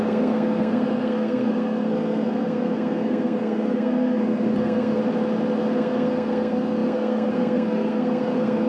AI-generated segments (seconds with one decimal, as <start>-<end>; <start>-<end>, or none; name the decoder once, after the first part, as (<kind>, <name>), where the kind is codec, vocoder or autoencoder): 0.0-5.0 (codec, SNAC); 5.6-8.7